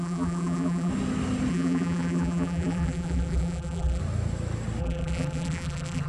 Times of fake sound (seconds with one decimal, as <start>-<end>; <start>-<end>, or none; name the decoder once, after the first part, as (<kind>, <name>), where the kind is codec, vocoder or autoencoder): 0.0-0.9 (vocoder, BigVGAN v2); 1.5-4.0; 4.8-6.1